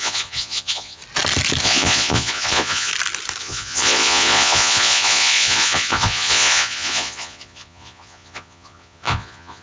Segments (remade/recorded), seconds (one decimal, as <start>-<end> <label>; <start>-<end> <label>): 0.0-1.0 remade; 1.0-1.6 recorded; 1.6-2.9 remade; 2.9-3.4 recorded; 3.4-9.6 remade